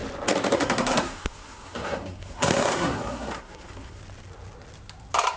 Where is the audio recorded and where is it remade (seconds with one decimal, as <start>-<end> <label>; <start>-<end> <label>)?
0.0-0.5 recorded; 0.5-4.0 remade; 4.0-5.4 recorded